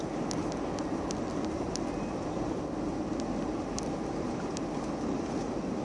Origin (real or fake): real